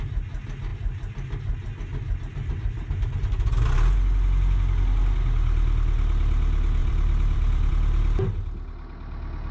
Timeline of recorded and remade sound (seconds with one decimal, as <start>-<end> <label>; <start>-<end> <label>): 0.0-6.8 recorded; 6.8-7.7 remade; 7.7-9.5 recorded